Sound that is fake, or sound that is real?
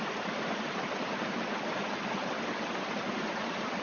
real